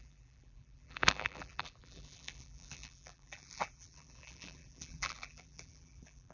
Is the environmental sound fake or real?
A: fake